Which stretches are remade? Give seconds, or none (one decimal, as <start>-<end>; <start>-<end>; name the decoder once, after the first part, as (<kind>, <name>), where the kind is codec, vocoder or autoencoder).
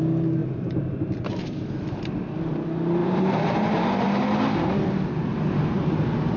0.4-1.6 (vocoder, BigVGAN v2); 3.0-4.1